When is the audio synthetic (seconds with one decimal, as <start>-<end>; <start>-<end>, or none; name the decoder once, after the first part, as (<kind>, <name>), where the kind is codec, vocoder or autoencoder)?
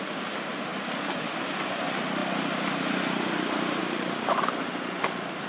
2.2-2.9 (vocoder, BigVGAN v2); 3.8-4.4